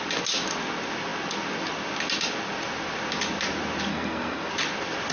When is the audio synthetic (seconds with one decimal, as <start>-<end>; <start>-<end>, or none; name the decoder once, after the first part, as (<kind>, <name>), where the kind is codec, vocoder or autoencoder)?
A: 3.9-4.5 (codec, SNAC)